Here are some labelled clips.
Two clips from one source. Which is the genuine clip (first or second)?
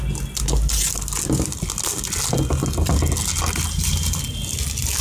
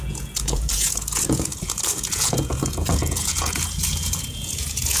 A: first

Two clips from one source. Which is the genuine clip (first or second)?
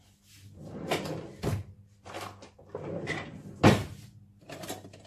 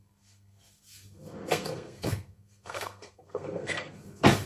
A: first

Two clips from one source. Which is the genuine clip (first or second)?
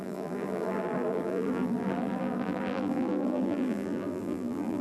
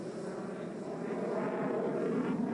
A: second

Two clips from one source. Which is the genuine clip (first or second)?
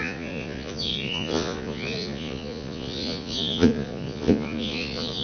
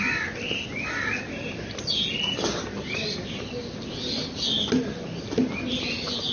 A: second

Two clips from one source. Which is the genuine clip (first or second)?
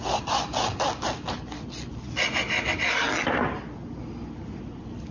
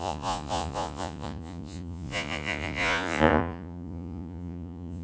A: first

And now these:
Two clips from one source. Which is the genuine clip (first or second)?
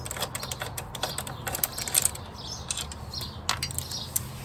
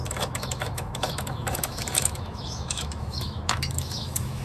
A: first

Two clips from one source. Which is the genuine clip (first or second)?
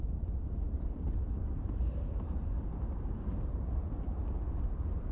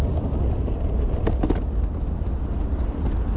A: second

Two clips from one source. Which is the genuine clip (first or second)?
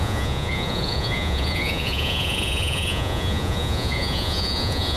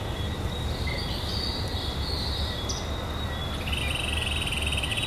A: second